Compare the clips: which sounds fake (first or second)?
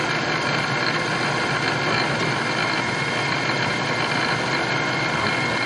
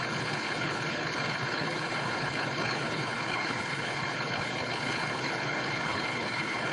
second